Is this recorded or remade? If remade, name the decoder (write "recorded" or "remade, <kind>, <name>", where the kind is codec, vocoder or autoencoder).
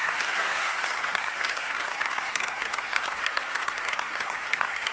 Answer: remade, codec, SNAC